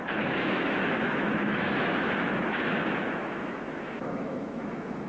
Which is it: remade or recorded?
remade